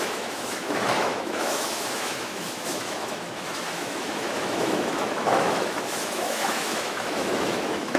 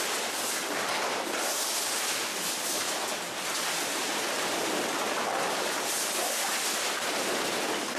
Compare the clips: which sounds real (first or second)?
second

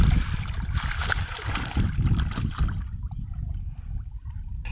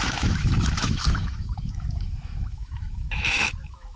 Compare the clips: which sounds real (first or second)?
first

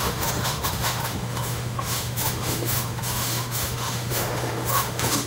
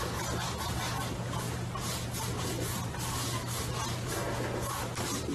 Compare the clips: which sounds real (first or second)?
second